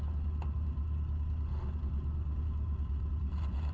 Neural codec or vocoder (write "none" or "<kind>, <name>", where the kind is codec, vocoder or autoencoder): none